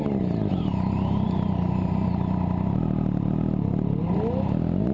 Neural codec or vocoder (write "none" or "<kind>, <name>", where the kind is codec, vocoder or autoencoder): none